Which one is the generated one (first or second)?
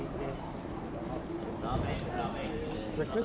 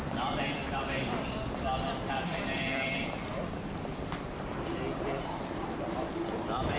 second